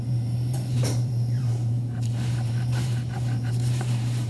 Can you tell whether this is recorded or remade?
remade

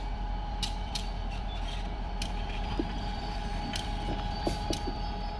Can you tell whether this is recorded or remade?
remade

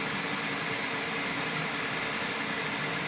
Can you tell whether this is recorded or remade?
recorded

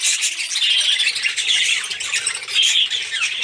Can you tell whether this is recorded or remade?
recorded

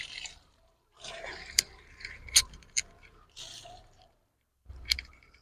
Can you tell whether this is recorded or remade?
remade